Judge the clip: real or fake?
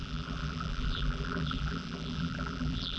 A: fake